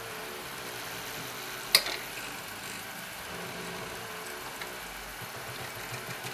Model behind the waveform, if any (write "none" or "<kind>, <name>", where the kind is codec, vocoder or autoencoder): none